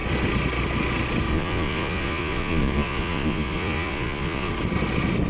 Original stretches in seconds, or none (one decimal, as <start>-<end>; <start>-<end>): 0.0-1.3; 4.5-5.3